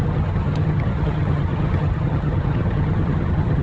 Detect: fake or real fake